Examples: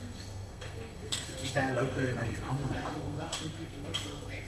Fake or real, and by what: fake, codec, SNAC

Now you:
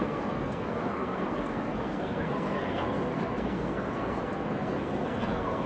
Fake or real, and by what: fake, codec, SNAC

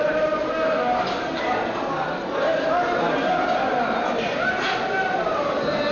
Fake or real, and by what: real